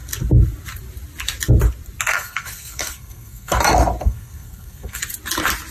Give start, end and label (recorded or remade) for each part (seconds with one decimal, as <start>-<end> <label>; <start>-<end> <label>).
0.0-2.1 recorded; 2.1-3.6 remade; 3.6-4.0 recorded; 4.0-5.0 remade; 5.0-5.7 recorded